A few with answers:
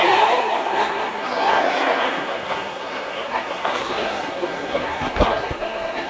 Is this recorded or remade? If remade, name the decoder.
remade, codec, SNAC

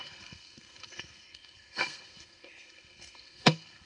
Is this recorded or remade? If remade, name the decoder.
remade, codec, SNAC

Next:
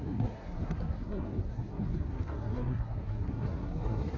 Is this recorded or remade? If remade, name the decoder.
remade, codec, SNAC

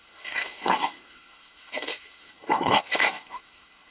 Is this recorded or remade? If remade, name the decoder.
remade, codec, SNAC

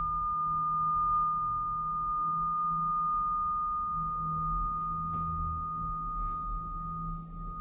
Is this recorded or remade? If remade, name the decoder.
recorded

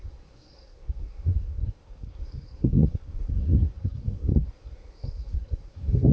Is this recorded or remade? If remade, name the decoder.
remade, codec, SNAC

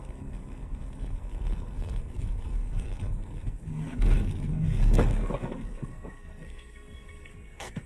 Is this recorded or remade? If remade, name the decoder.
remade, codec, SNAC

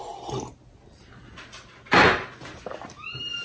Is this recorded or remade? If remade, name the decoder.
recorded